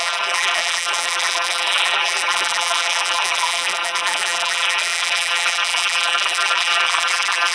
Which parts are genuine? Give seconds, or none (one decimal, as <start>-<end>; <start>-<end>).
none